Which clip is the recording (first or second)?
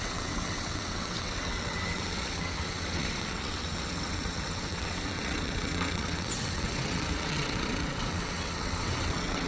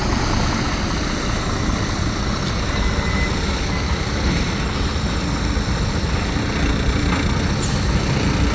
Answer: second